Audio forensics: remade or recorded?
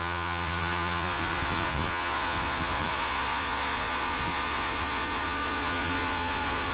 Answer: remade